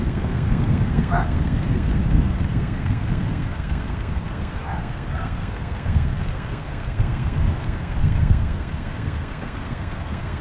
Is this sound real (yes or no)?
no